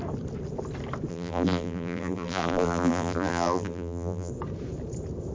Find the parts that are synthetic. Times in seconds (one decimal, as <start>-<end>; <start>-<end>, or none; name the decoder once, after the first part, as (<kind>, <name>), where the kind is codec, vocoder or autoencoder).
1.1-4.3 (vocoder, BigVGAN v2)